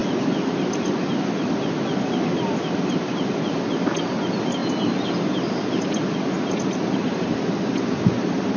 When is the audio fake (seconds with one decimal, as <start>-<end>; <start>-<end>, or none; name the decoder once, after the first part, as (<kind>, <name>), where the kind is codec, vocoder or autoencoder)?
none